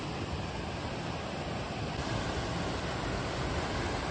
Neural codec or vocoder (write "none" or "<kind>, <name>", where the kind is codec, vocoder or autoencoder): none